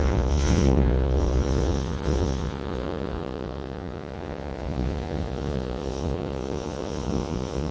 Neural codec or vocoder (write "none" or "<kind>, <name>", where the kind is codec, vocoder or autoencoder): vocoder, Vocos